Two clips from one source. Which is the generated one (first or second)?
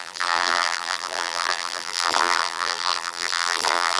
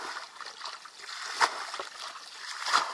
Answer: first